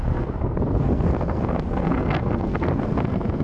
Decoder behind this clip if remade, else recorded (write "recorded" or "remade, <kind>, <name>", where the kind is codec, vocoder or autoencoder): remade, codec, SNAC